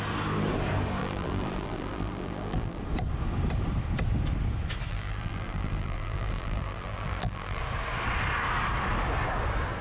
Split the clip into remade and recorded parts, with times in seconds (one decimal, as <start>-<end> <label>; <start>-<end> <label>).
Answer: 0.0-1.0 recorded; 1.0-2.8 remade; 2.8-4.9 recorded; 4.9-7.6 remade; 7.6-9.8 recorded